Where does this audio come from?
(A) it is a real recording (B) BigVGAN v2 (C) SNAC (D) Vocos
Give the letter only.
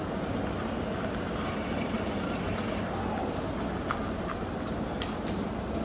A